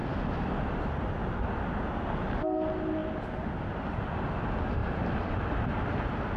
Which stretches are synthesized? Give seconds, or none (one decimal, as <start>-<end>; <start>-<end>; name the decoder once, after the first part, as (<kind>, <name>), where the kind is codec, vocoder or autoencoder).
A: 0.0-0.8 (vocoder, BigVGAN v2)

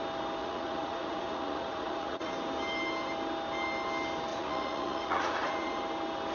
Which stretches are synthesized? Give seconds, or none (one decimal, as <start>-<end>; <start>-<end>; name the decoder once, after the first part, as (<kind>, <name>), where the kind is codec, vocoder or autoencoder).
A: 0.4-2.3 (vocoder, Vocos); 4.3-5.8

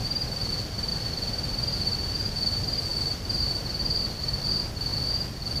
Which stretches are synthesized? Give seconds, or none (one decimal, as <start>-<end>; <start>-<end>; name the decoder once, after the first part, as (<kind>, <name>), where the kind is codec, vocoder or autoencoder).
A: 2.9-3.7 (vocoder, BigVGAN v2)

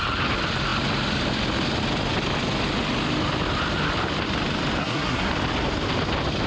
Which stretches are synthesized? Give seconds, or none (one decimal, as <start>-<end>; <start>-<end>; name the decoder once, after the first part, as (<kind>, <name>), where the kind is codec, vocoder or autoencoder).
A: 4.8-5.3 (codec, SNAC)

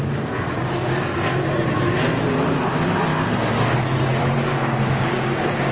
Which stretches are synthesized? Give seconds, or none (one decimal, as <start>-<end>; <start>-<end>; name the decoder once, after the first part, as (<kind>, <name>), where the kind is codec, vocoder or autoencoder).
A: 4.2-5.7 (codec, DAC)

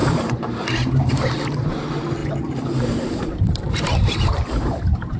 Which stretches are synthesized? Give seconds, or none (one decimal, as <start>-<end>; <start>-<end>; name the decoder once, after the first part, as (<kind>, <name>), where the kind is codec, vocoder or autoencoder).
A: 0.0-1.1 (vocoder, BigVGAN v2); 2.2-3.6

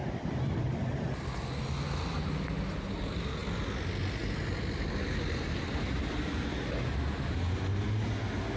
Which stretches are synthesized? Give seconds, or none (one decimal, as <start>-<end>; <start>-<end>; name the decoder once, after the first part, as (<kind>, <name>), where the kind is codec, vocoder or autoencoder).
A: none

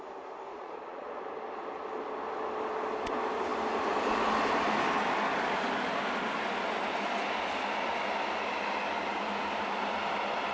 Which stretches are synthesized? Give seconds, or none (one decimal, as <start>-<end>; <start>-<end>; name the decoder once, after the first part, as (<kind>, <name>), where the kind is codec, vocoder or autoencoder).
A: 0.5-1.1 (vocoder, Vocos)